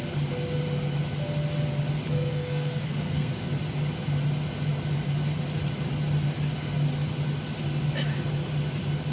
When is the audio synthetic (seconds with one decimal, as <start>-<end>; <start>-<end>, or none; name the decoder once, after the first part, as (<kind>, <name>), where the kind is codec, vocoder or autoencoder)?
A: 2.1-3.3 (codec, SNAC)